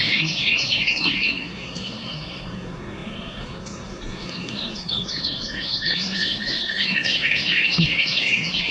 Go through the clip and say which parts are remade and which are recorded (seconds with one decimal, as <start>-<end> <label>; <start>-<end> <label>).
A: 0.0-8.7 remade